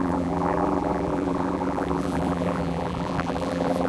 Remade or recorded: remade